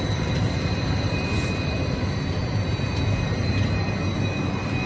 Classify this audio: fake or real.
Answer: fake